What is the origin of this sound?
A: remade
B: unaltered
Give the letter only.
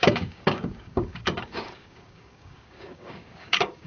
A